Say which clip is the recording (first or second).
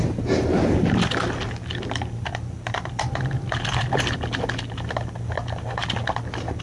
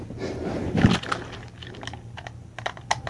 second